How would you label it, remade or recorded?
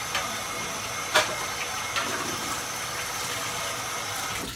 recorded